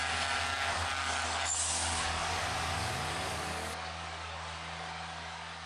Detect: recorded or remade remade